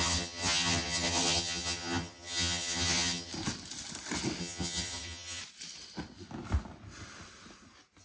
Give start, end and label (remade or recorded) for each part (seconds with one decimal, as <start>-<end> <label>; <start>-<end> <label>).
0.0-3.3 remade; 3.3-4.4 recorded; 4.4-5.4 remade; 5.4-8.0 recorded